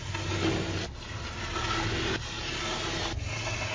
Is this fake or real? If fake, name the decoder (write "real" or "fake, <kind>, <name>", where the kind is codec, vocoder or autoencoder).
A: real